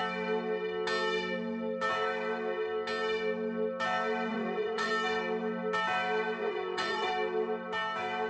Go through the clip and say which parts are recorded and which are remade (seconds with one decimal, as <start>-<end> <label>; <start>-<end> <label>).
0.0-4.3 recorded; 4.3-4.9 remade; 4.9-6.4 recorded; 6.4-7.1 remade; 7.1-8.3 recorded